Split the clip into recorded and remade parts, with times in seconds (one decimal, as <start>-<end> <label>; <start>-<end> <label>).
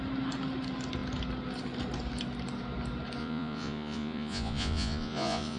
0.0-3.2 recorded; 3.2-5.6 remade